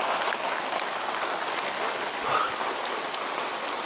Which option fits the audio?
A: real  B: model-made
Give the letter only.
A